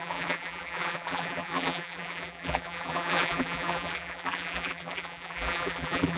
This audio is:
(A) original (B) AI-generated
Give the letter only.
B